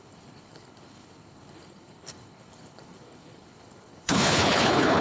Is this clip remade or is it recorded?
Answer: remade